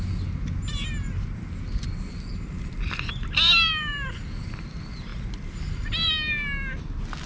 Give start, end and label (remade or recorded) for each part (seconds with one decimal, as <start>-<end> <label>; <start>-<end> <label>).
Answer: 0.0-7.3 recorded